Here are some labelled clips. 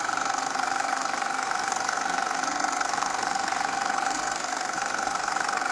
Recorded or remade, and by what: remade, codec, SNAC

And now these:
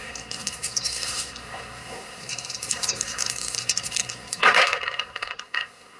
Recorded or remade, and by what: remade, codec, SNAC